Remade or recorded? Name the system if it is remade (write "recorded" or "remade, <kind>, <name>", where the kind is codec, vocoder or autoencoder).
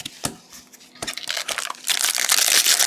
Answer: recorded